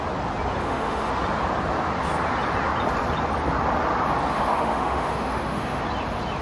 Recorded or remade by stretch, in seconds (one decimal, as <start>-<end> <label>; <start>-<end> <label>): 0.0-0.6 recorded; 0.6-1.1 remade; 1.1-4.3 recorded; 4.3-5.8 remade; 5.8-6.4 recorded

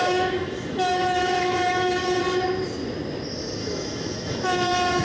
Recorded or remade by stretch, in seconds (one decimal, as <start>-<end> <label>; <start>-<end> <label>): 0.0-2.2 remade; 2.2-3.6 recorded; 3.6-5.0 remade

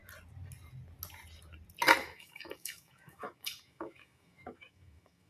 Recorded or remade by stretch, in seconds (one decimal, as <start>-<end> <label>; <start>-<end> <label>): 0.0-2.0 recorded; 2.0-5.3 remade

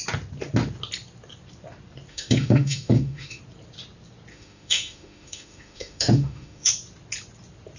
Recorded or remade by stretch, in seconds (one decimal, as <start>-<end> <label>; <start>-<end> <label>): 0.0-2.1 recorded; 2.1-3.4 remade; 3.4-4.3 recorded; 4.3-6.7 remade; 6.7-7.8 recorded

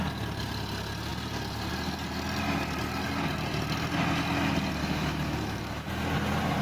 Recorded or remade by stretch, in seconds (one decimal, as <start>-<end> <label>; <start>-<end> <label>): 0.0-4.8 recorded; 4.8-5.9 remade; 5.9-6.6 recorded

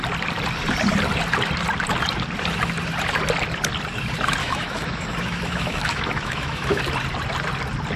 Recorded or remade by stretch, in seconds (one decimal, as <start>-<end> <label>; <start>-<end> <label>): 0.0-4.4 recorded; 4.4-6.8 remade; 6.8-8.0 recorded

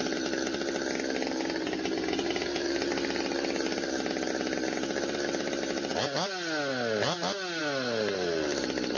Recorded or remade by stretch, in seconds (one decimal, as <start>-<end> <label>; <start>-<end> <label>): 0.0-9.0 recorded

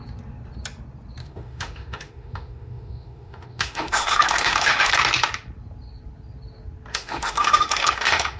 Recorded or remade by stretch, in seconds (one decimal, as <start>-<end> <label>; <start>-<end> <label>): 0.0-1.2 recorded; 1.2-4.9 remade; 4.9-6.9 recorded; 6.9-8.4 remade